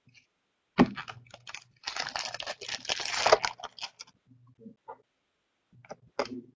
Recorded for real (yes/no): yes